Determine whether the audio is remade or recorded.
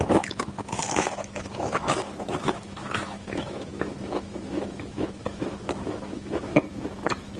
remade